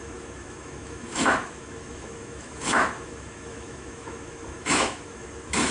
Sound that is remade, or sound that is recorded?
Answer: remade